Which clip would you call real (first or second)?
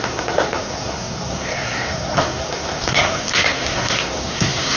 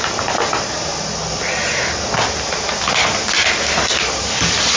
second